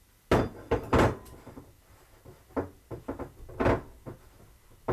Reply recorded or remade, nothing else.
recorded